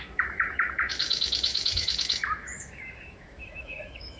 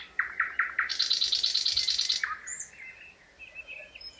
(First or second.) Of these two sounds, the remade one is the first